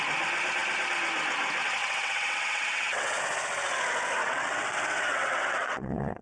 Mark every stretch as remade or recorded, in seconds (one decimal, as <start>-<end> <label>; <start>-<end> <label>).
0.0-1.8 recorded; 1.8-3.2 remade; 3.2-4.2 recorded; 4.2-6.2 remade